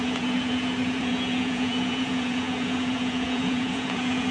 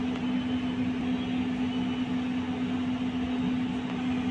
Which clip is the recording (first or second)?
second